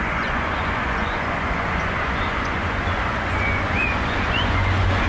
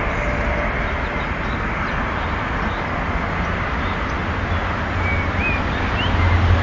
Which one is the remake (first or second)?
first